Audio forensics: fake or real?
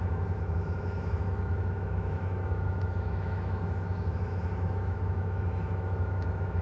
fake